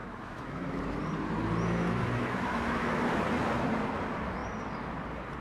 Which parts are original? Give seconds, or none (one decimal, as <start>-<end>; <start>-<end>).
0.8-2.0; 3.0-5.4